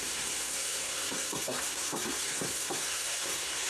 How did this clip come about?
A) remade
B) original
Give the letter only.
A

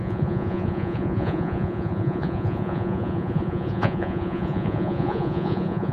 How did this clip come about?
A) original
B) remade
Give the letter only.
B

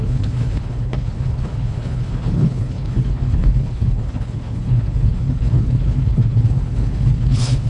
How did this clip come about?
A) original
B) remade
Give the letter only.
B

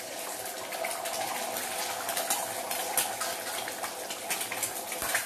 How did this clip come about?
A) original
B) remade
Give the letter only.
A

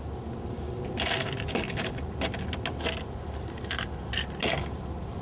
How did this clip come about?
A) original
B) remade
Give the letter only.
A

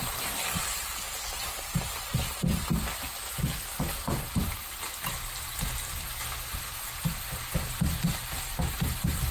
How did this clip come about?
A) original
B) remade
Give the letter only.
A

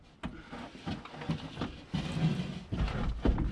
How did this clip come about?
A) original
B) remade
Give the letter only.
A